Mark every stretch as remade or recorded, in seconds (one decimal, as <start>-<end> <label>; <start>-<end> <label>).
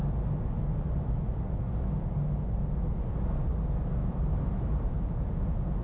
0.0-4.0 recorded; 4.0-5.2 remade; 5.2-5.8 recorded